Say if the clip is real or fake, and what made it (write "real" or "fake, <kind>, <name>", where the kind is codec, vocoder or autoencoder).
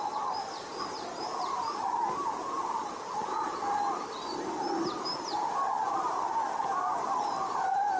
real